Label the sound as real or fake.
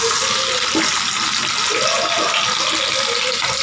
real